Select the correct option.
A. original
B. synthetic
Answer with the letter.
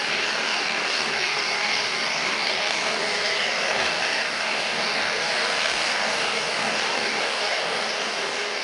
B